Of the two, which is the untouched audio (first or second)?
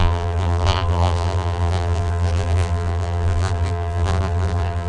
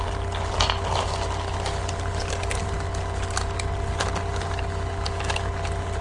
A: second